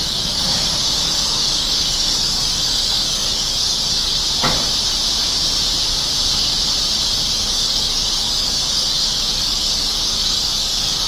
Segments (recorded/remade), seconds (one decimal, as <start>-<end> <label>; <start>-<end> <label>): 0.0-4.2 remade; 4.2-7.3 recorded; 7.3-11.1 remade